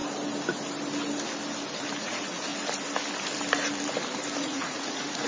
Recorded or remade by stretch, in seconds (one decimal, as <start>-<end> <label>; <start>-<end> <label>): 0.0-2.0 recorded; 2.0-2.5 remade; 2.5-4.4 recorded; 4.4-5.3 remade